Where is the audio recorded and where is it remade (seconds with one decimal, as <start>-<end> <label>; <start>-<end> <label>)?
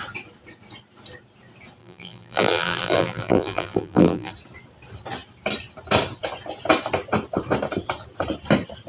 0.0-1.8 recorded; 1.8-4.3 remade; 4.3-8.9 recorded